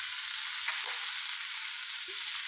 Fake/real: real